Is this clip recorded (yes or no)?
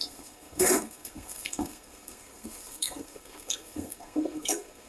no